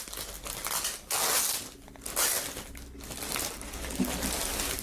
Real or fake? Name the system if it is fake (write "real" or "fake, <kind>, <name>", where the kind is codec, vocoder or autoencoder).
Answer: real